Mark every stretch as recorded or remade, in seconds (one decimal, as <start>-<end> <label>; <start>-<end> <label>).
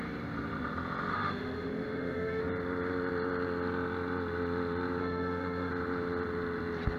0.0-1.1 recorded; 1.1-2.4 remade; 2.4-5.0 recorded; 5.0-5.7 remade; 5.7-7.0 recorded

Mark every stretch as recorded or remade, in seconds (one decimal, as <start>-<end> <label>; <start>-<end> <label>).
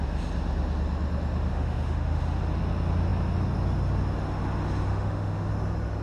0.0-1.5 recorded; 1.5-2.2 remade; 2.2-4.9 recorded; 4.9-5.5 remade; 5.5-6.0 recorded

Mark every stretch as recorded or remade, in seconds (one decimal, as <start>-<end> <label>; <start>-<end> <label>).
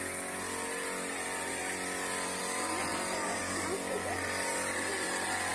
0.0-5.5 recorded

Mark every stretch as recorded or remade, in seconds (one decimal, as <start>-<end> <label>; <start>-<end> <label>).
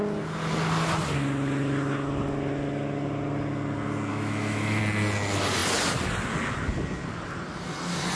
0.0-4.1 recorded; 4.1-4.8 remade; 4.8-8.2 recorded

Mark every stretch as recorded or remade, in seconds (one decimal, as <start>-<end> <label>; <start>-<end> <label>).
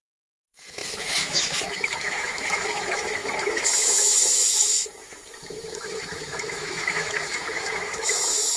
0.0-8.6 remade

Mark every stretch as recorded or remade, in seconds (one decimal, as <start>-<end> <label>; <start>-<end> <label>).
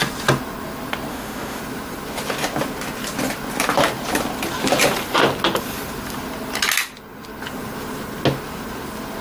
0.0-1.1 recorded; 1.1-1.6 remade; 1.6-9.2 recorded